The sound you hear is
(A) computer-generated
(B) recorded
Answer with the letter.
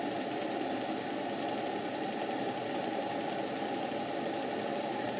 B